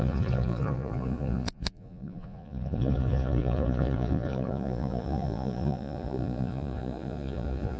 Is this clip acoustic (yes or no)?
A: no